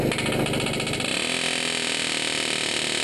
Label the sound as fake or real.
real